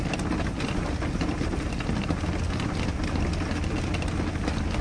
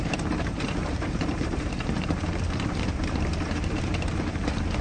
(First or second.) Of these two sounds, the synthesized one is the second